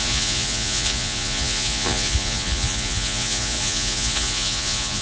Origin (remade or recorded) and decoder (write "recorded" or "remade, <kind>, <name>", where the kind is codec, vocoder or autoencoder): remade, vocoder, Vocos